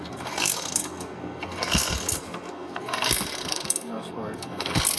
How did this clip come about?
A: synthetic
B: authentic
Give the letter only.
A